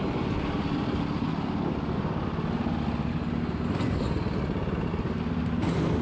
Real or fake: real